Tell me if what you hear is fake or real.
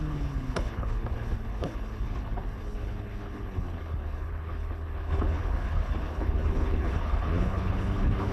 fake